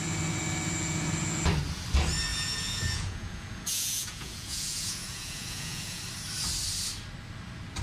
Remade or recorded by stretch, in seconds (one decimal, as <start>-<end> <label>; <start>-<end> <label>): 0.0-2.3 recorded; 2.3-6.0 remade; 6.0-7.8 recorded